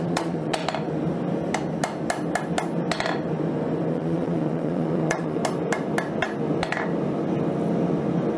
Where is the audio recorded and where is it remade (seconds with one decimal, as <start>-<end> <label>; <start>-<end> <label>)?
0.0-0.6 remade; 0.6-3.9 recorded; 3.9-5.4 remade; 5.4-8.4 recorded